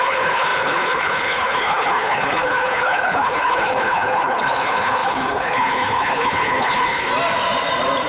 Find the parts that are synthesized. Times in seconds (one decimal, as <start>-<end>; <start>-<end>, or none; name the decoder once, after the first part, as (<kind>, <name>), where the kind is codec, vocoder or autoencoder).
0.0-7.1 (codec, HILCodec)